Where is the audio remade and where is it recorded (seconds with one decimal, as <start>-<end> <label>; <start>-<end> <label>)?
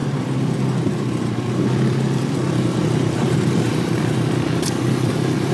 0.0-5.5 remade